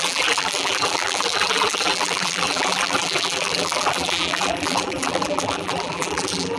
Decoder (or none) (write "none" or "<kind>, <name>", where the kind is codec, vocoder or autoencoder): vocoder, BigVGAN v2